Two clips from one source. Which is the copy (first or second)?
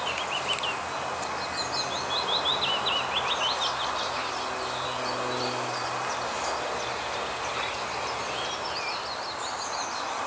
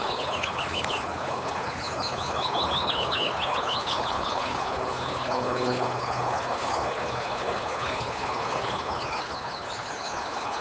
second